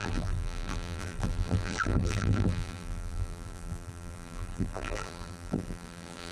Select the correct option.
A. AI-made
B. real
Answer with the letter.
A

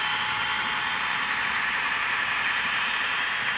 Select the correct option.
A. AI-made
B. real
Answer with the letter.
A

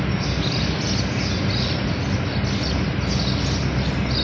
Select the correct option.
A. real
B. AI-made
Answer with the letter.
A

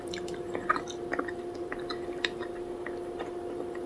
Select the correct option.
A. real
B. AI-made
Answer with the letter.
B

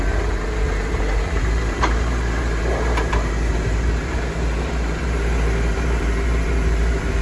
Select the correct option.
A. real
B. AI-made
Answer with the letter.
B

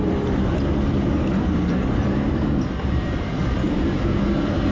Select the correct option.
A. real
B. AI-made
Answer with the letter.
B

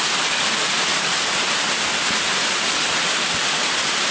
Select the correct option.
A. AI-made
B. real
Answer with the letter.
B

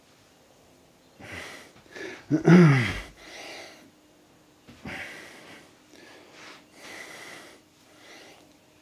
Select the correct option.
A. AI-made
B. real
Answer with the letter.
B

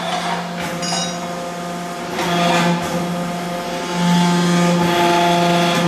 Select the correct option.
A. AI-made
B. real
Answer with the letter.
B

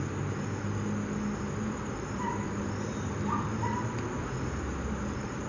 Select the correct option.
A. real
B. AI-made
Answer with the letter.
A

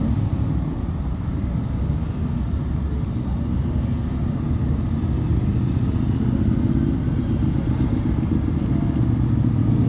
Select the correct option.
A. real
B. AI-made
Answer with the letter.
A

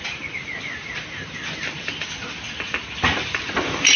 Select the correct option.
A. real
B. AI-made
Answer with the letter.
A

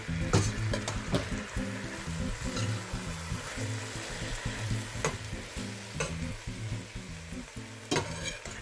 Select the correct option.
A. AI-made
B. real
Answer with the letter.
B